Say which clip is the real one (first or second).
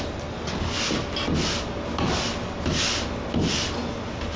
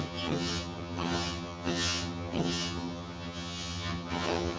first